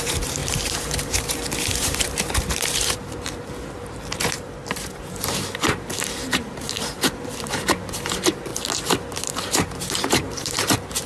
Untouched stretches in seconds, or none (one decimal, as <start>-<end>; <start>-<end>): 8.5-9.3